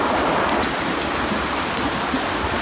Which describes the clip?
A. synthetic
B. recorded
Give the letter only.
B